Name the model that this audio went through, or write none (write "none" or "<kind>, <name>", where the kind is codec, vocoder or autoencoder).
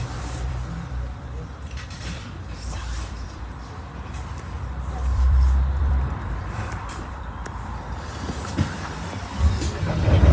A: vocoder, BigVGAN v2